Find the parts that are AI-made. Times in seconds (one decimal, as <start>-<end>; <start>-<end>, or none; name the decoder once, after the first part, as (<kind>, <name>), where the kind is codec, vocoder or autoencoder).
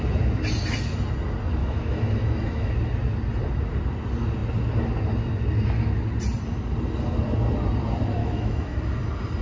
1.6-2.7 (autoencoder, DAC-VAE); 8.2-8.8